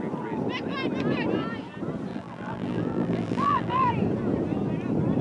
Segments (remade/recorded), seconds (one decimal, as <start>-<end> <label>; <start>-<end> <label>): 0.0-2.1 recorded; 2.1-3.9 remade; 3.9-5.2 recorded